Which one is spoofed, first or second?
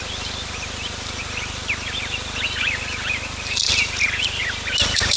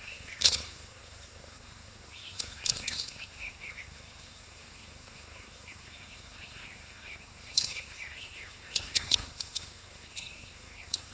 second